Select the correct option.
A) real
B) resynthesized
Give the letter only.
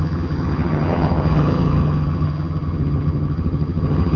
B